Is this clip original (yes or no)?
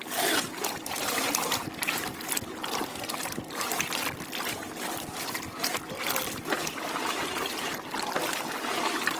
yes